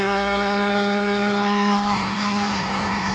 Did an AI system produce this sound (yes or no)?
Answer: yes